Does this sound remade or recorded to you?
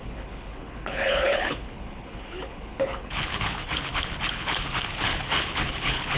remade